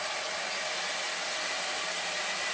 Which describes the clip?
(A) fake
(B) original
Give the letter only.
B